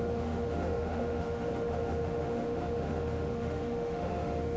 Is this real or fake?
fake